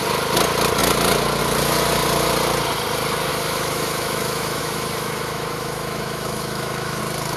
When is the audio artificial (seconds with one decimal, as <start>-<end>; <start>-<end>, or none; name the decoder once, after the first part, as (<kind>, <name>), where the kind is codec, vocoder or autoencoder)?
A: 3.3-7.0 (autoencoder, DAC-VAE)